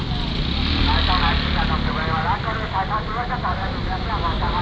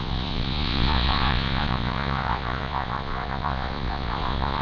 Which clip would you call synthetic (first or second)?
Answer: second